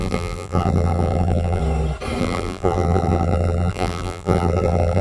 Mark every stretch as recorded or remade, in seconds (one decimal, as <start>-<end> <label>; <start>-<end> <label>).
0.0-1.6 remade; 1.6-2.2 recorded; 2.2-5.0 remade